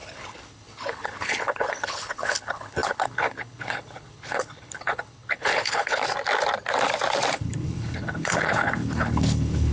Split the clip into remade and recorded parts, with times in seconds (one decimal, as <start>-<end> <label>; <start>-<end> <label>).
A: 0.0-6.0 remade; 6.0-7.3 recorded; 7.3-9.7 remade

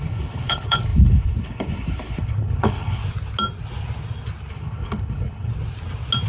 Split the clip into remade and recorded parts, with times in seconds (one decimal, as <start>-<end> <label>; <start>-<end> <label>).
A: 0.0-3.0 remade; 3.0-4.5 recorded; 4.5-5.5 remade; 5.5-6.3 recorded

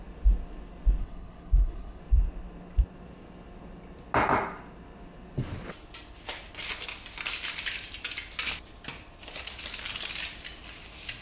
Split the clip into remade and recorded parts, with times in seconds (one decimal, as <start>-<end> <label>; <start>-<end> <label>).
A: 0.0-1.0 recorded; 1.0-2.0 remade; 2.0-11.2 recorded

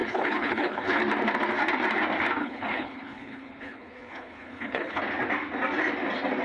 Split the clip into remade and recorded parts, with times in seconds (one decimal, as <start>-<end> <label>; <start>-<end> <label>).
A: 0.0-1.0 remade; 1.0-2.4 recorded; 2.4-5.0 remade; 5.0-6.4 recorded

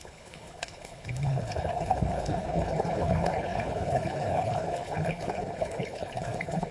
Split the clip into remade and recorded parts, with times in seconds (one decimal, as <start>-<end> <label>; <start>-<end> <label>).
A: 0.0-6.7 remade